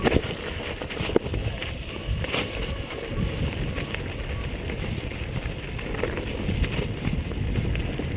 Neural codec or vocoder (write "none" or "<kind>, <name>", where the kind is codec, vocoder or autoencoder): none